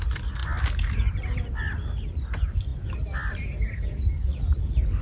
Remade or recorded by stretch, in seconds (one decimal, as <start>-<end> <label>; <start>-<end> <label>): 0.0-5.0 recorded